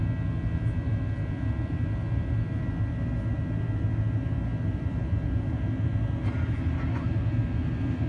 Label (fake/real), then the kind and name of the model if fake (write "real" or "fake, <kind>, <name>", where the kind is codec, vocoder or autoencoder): real